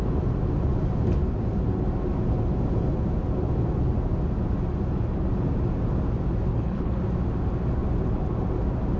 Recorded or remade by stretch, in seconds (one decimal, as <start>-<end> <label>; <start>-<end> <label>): 0.0-6.5 recorded; 6.5-7.0 remade; 7.0-9.0 recorded